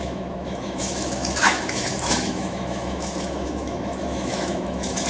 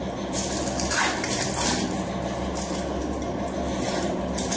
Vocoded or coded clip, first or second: first